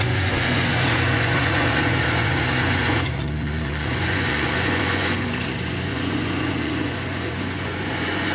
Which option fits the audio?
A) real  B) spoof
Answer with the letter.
B